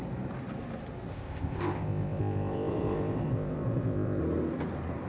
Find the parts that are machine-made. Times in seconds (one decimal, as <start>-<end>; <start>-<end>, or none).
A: 1.1-4.2